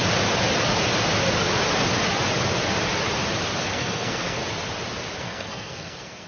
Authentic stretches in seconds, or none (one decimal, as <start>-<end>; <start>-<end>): 0.0-3.6; 4.4-5.2

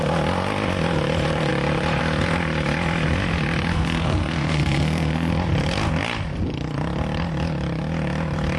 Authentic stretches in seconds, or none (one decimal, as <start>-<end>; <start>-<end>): 0.0-3.7; 5.3-8.6

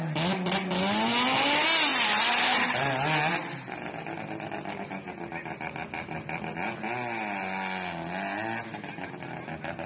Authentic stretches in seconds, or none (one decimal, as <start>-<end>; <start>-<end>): 0.0-9.9

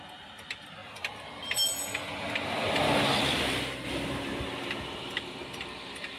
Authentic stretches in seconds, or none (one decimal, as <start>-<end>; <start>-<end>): 0.0-6.2

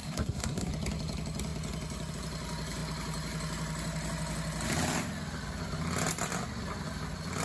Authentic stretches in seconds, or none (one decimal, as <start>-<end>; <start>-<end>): 0.7-7.4

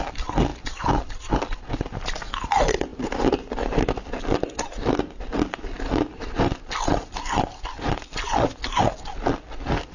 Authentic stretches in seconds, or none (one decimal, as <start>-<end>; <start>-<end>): 0.0-9.9

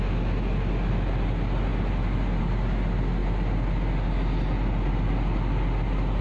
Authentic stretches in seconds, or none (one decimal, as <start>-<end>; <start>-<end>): 0.0-6.2